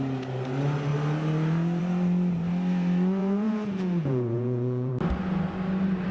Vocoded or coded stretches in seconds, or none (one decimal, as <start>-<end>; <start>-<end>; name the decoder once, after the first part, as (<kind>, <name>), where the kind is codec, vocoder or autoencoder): 3.2-4.9 (vocoder, Vocos)